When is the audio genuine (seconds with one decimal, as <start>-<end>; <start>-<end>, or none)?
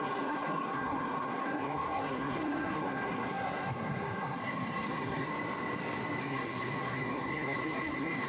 5.3-6.2